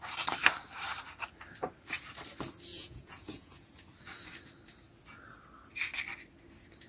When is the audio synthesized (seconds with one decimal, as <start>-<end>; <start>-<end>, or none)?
2.7-3.7